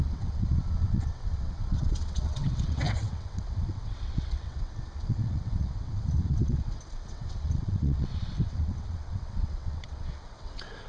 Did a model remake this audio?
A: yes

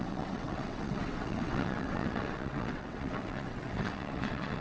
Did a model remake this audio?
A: yes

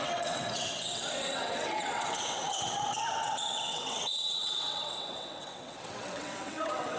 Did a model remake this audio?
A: yes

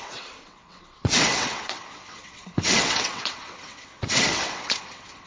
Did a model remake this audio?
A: yes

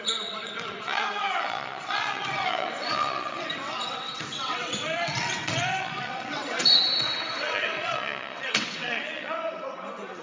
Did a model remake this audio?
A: yes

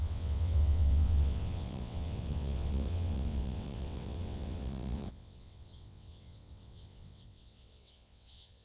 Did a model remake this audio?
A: yes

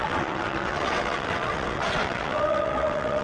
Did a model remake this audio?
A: yes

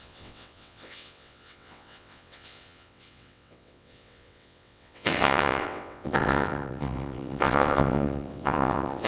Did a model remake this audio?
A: yes